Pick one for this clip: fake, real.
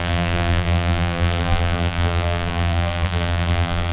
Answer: fake